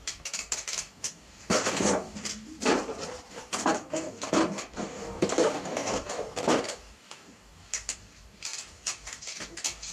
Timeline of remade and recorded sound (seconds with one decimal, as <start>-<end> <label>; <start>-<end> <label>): 0.0-2.5 remade; 2.5-3.3 recorded; 3.3-9.9 remade